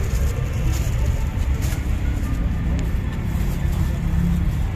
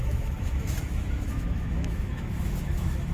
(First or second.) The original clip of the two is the first